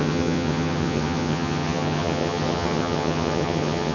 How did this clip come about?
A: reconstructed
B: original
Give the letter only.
A